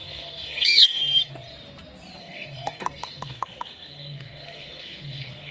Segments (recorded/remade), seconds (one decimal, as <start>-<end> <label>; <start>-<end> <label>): 0.0-1.3 remade; 1.3-2.2 recorded; 2.2-5.5 remade